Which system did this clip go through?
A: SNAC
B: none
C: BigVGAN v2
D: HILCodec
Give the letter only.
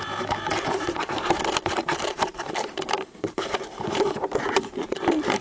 C